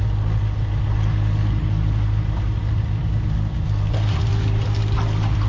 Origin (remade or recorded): recorded